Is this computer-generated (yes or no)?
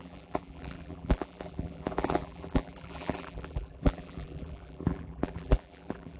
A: yes